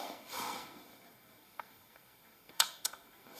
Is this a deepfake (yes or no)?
yes